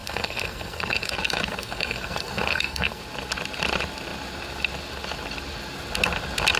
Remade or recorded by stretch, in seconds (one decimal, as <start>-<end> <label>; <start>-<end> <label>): 0.0-3.0 remade; 3.0-6.6 recorded